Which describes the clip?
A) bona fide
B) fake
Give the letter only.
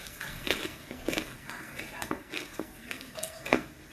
B